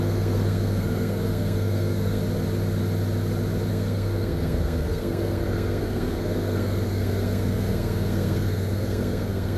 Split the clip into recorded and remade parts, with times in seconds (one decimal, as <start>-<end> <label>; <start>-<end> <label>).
0.0-2.2 remade; 2.2-3.7 recorded; 3.7-9.6 remade